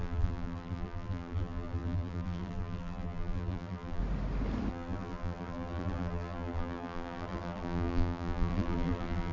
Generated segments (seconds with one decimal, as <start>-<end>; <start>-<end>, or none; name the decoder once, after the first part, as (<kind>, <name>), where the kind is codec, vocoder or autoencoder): 0.0-4.0 (vocoder, BigVGAN v2); 4.7-9.3